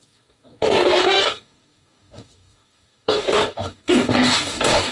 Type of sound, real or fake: fake